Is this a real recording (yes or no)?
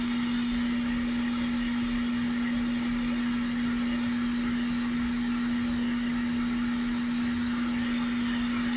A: yes